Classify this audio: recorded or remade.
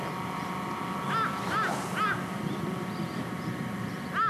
recorded